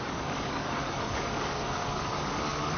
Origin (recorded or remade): remade